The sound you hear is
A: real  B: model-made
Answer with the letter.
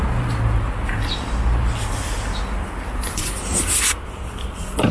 A